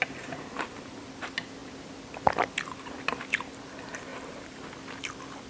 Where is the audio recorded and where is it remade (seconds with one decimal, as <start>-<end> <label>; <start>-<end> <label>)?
0.0-4.1 recorded; 4.1-4.6 remade; 4.6-5.5 recorded